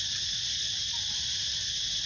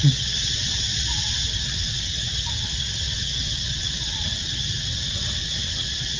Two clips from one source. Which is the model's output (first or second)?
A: second